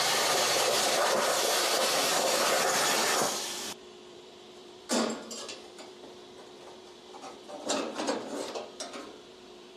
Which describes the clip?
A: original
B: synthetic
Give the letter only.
B